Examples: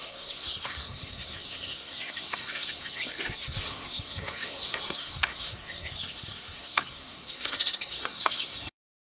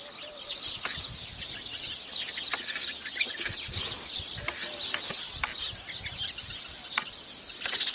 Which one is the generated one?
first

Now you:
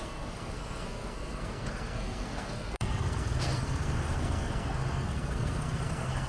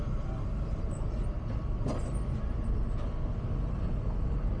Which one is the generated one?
first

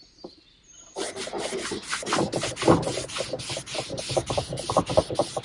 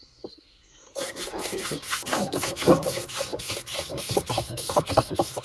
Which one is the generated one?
second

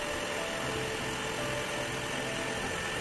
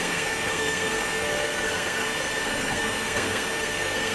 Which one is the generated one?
second